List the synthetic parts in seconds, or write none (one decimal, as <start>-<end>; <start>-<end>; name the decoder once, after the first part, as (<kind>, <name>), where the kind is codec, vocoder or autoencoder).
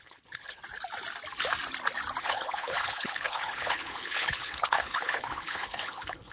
0.0-0.6 (codec, HILCodec); 2.2-6.3